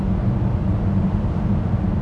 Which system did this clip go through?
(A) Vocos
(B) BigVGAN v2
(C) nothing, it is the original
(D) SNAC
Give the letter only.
C